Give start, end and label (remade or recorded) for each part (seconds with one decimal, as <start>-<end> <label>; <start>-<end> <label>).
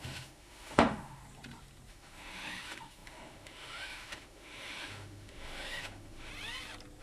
0.0-1.2 remade; 1.2-1.9 recorded; 1.9-6.3 remade; 6.3-7.0 recorded